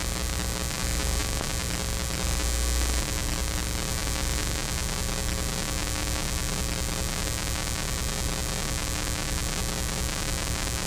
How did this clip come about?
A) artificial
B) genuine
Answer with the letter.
B